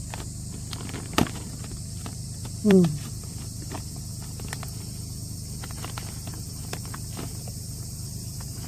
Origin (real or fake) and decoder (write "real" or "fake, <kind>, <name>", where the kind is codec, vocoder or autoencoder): fake, vocoder, BigVGAN v2